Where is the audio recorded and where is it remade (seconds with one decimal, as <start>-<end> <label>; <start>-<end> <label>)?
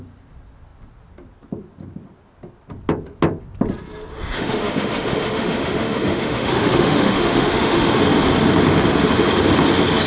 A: 0.0-4.1 recorded; 4.1-8.0 remade; 8.0-10.1 recorded